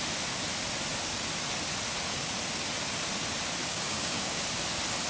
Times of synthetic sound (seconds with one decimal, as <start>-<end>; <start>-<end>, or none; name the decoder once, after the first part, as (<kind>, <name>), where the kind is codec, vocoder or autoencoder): 3.7-4.4 (codec, DAC)

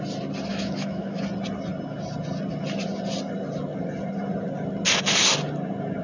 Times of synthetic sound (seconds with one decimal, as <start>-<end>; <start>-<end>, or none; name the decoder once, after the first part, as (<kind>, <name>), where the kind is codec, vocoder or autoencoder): 0.5-1.2 (autoencoder, DAC-VAE)

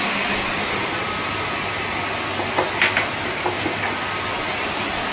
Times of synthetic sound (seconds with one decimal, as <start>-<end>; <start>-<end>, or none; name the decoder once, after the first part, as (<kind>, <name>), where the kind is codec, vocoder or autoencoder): none